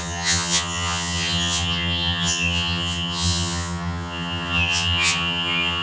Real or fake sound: fake